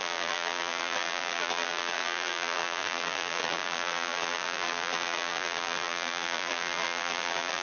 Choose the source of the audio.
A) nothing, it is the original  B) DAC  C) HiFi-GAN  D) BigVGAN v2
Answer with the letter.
D